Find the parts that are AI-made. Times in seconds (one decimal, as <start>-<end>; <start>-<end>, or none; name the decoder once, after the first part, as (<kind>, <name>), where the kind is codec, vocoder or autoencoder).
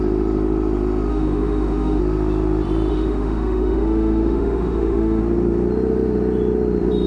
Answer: 1.1-2.0 (autoencoder, DAC-VAE); 2.9-5.2